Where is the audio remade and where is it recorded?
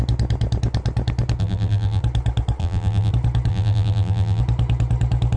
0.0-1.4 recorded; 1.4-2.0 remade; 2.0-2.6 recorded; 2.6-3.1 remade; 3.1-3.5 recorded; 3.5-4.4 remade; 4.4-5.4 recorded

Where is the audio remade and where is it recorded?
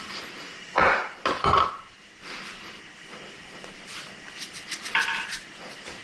0.0-0.8 recorded; 0.8-2.2 remade; 2.2-6.0 recorded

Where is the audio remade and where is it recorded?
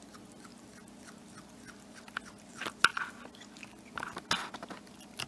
0.0-5.3 recorded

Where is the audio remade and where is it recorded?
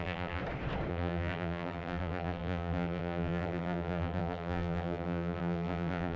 0.0-0.4 remade; 0.4-0.9 recorded; 0.9-6.2 remade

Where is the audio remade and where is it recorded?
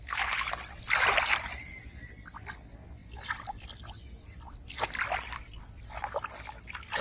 0.0-7.0 recorded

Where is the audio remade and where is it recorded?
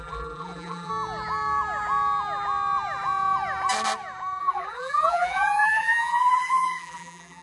0.0-0.9 remade; 0.9-4.4 recorded; 4.4-7.4 remade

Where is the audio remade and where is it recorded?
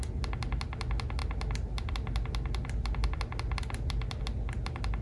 0.0-5.0 recorded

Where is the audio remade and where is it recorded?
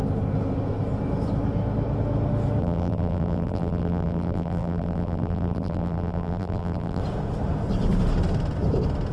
0.0-2.6 recorded; 2.6-7.0 remade; 7.0-9.1 recorded